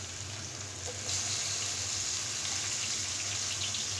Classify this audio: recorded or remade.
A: recorded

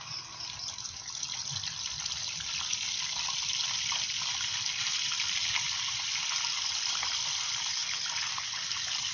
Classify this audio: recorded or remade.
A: recorded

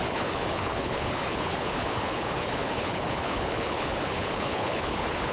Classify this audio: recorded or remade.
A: remade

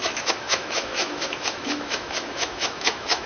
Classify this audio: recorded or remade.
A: remade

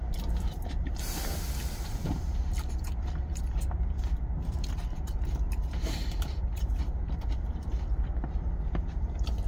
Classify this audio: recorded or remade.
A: remade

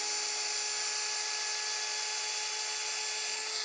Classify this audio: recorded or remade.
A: recorded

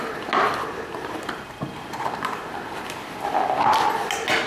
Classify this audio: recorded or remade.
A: recorded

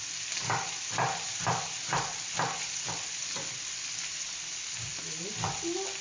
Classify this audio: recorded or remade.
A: recorded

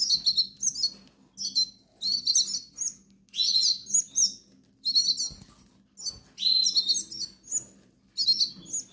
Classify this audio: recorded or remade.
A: recorded